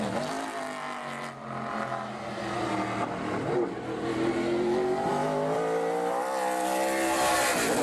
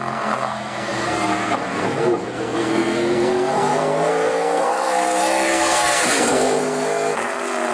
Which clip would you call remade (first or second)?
second